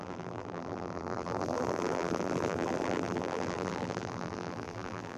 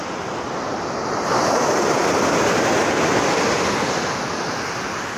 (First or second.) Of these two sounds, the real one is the second